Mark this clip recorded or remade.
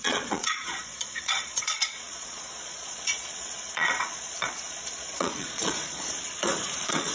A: remade